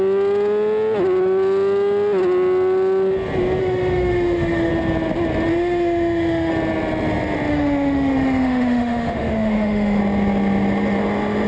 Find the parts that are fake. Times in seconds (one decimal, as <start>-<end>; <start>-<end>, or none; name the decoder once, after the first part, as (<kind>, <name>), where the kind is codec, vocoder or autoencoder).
3.6-4.7 (autoencoder, DAC-VAE); 5.5-6.5; 7.5-10.0